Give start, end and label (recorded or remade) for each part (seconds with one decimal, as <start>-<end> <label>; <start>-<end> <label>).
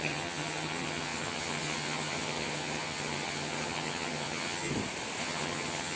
0.0-4.7 remade; 4.7-5.2 recorded; 5.2-6.0 remade